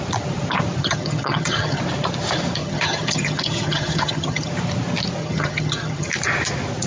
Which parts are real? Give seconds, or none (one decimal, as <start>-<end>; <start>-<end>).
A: 0.0-0.8; 1.8-2.6; 4.5-5.2; 6.1-6.9